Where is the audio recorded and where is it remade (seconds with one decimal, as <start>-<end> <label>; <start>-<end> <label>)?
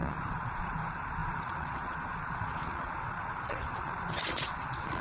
0.0-5.0 remade